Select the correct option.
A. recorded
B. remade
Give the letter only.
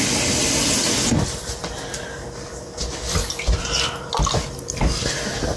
A